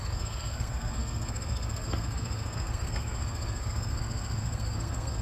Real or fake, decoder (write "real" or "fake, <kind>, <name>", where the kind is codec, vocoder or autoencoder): fake, codec, SNAC